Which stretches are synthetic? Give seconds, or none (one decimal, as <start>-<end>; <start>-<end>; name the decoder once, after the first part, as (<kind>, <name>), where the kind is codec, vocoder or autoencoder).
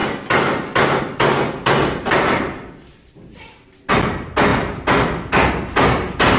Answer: none